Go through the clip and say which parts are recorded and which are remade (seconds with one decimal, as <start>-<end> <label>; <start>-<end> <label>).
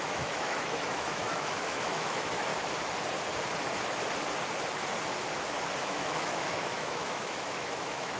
0.0-2.5 remade; 2.5-5.8 recorded; 5.8-8.2 remade